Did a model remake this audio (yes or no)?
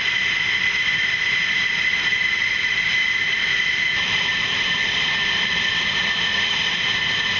yes